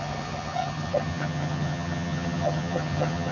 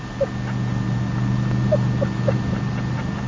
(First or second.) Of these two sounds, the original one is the second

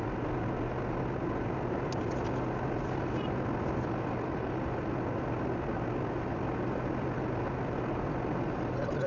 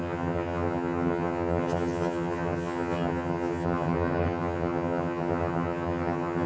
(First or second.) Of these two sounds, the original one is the first